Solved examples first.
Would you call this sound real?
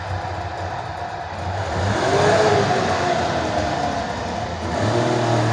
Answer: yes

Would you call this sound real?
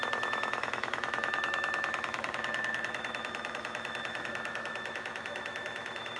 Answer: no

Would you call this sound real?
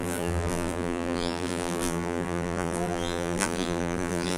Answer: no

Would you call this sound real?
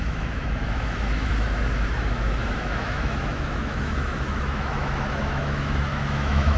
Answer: no